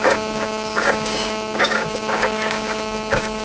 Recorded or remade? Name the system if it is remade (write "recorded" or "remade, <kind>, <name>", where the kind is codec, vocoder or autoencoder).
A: remade, codec, DAC